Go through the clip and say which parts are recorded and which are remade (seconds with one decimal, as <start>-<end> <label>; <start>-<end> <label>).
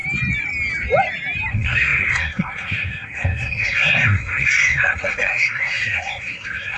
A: 0.0-1.5 recorded; 1.5-6.8 remade